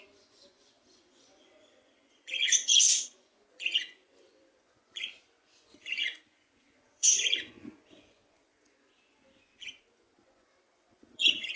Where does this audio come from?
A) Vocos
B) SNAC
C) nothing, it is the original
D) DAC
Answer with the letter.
A